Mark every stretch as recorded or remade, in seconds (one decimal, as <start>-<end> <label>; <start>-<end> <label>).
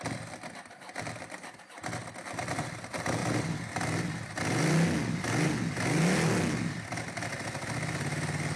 0.0-8.6 recorded